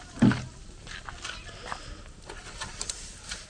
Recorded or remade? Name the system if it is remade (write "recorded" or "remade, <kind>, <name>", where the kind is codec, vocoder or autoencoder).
recorded